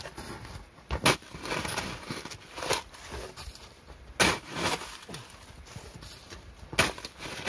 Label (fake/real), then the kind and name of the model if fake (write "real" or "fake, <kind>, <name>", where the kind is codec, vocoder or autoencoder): real